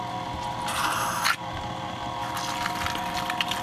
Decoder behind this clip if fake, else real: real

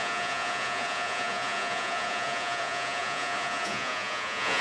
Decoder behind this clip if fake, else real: fake, vocoder, Vocos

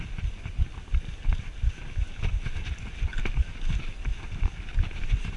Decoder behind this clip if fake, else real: real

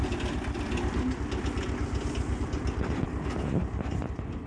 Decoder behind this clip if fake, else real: real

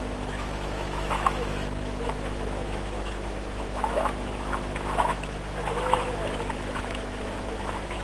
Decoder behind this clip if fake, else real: fake, autoencoder, DAC-VAE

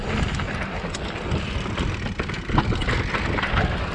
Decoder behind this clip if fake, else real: real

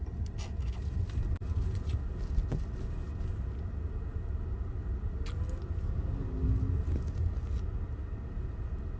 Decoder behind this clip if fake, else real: real